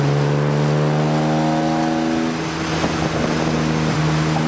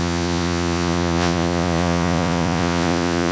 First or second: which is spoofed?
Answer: second